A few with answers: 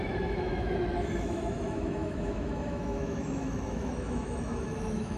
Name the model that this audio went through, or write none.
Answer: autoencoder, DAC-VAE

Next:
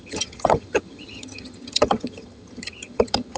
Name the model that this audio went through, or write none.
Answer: vocoder, HiFi-GAN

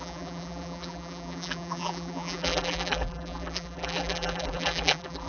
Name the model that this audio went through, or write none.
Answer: vocoder, BigVGAN v2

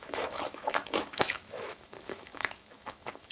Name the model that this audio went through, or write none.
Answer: autoencoder, DAC-VAE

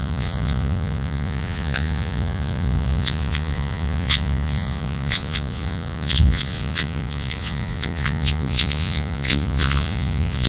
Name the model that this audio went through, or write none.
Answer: vocoder, Vocos